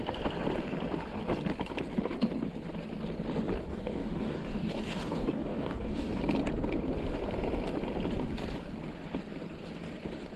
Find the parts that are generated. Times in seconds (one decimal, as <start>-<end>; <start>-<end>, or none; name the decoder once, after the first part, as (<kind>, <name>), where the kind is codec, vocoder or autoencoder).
3.7-6.2 (codec, DAC)